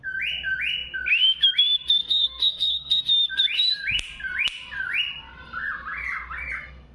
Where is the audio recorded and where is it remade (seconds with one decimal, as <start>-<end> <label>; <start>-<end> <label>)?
0.0-2.0 recorded; 2.0-3.0 remade; 3.0-6.9 recorded